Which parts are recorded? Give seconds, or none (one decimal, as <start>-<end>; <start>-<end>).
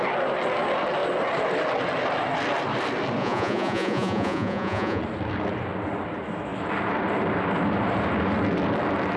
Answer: 0.0-3.2; 5.0-9.2